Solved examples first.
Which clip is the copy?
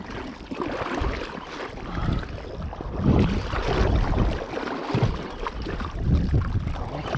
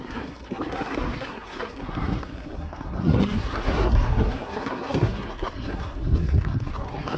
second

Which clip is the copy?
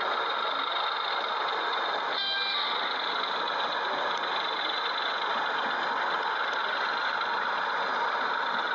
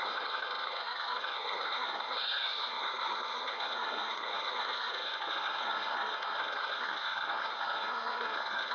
second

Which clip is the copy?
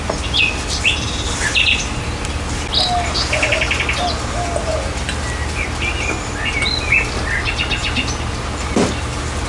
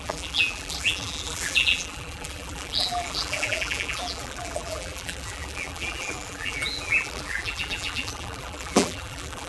second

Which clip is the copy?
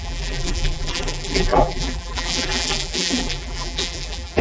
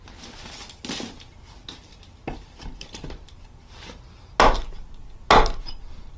first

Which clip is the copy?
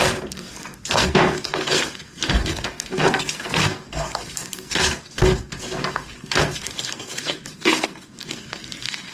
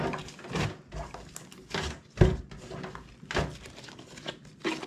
first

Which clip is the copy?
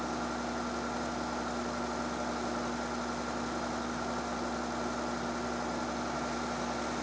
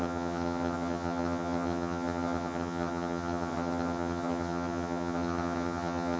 second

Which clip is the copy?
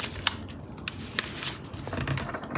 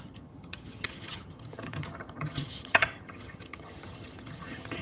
second